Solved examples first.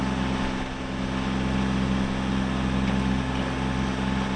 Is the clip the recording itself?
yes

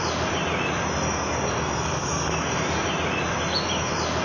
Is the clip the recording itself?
yes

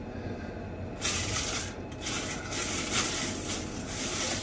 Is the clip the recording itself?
yes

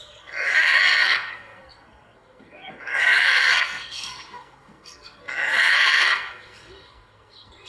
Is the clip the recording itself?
no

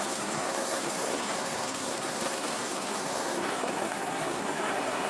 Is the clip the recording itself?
no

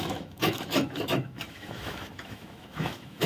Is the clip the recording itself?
no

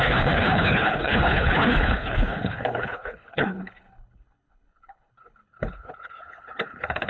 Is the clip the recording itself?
no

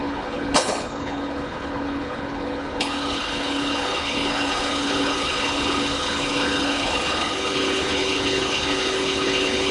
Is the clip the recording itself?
no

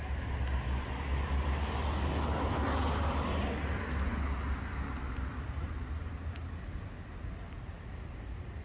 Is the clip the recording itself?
yes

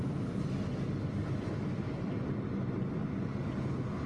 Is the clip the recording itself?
yes